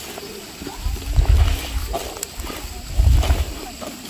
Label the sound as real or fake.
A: real